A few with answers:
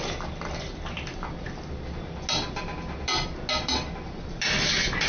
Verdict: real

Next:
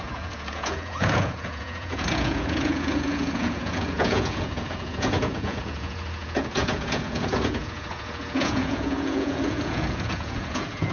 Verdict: fake